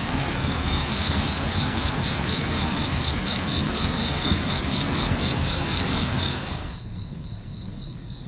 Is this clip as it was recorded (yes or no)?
no